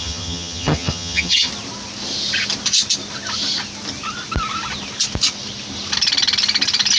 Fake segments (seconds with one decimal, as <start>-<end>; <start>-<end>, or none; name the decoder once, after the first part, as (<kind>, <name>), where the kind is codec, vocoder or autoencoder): 0.0-1.5 (vocoder, HiFi-GAN)